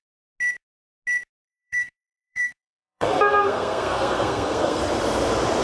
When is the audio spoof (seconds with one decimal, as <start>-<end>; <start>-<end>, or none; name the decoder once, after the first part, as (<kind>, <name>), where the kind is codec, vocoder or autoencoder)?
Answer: 1.4-4.8 (codec, SNAC)